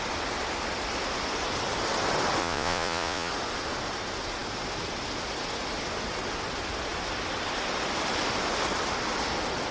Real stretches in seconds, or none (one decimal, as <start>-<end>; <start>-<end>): 0.0-2.4; 3.3-9.7